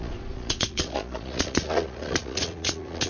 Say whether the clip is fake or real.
fake